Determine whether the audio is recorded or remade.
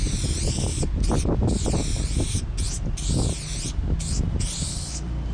recorded